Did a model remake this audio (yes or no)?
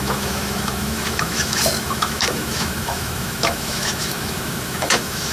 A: yes